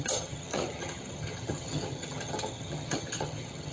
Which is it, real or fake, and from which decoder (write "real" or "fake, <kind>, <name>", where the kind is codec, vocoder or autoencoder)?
fake, vocoder, HiFi-GAN